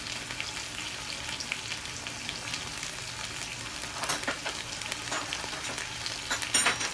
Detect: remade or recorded recorded